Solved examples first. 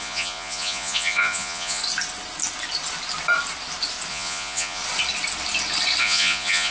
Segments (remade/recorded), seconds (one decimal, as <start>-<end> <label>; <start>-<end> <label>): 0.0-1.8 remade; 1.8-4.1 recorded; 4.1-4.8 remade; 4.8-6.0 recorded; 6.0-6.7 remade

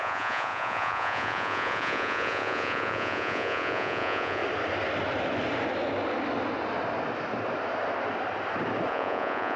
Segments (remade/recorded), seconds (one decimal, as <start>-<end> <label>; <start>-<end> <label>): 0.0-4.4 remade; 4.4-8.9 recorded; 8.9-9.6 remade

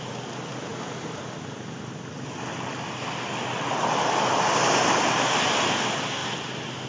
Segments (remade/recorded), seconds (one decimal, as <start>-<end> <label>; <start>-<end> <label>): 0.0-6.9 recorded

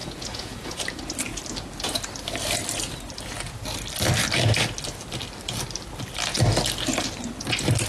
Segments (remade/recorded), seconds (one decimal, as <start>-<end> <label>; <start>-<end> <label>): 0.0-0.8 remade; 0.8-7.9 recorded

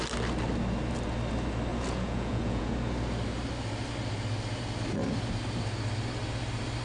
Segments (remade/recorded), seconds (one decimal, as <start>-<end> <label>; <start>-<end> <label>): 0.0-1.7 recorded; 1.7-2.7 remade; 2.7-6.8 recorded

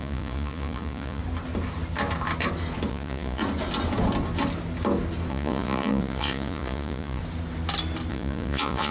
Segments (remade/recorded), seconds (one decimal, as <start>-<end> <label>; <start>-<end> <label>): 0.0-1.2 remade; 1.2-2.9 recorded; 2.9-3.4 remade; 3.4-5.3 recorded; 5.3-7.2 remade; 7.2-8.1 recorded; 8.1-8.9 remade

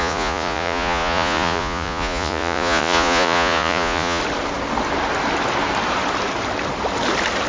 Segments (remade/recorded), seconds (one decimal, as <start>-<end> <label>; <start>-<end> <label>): 0.0-4.2 remade; 4.2-7.5 recorded

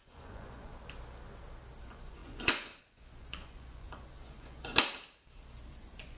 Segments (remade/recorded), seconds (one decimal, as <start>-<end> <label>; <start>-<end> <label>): 0.0-0.7 remade; 0.7-1.8 recorded; 1.8-4.7 remade; 4.7-5.7 recorded; 5.7-6.2 remade